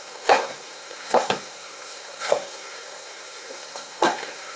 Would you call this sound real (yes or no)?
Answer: no